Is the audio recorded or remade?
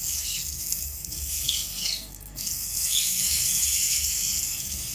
remade